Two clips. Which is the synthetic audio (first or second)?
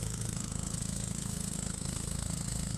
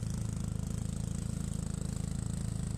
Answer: first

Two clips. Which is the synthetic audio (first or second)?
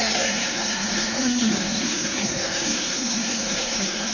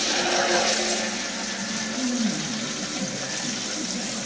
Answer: first